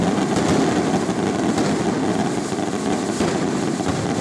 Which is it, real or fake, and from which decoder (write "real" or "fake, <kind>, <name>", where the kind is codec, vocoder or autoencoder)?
real